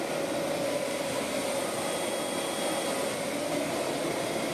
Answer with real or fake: real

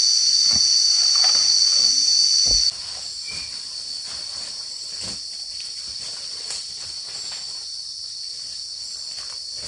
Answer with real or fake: real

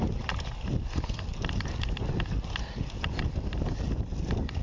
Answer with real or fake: real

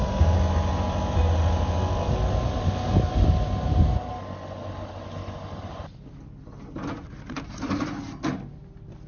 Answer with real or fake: real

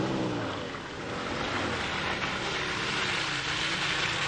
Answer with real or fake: real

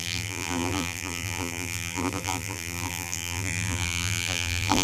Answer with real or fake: fake